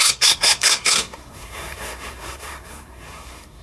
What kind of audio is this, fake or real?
fake